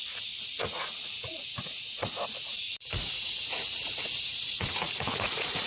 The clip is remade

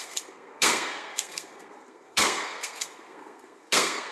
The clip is remade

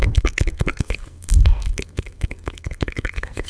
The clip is remade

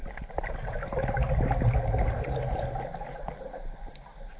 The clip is recorded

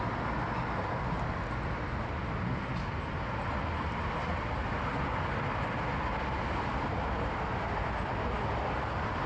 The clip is recorded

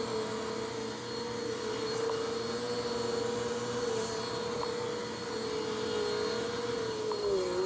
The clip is recorded